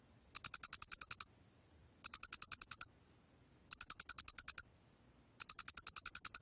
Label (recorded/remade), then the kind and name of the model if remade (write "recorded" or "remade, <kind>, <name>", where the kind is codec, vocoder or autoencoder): recorded